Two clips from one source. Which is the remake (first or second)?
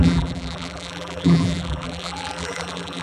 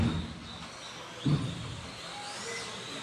first